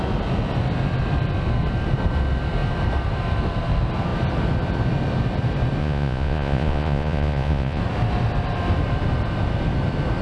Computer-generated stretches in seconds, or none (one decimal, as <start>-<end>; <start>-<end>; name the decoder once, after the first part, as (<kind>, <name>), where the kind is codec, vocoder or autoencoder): 5.8-7.8 (vocoder, Vocos)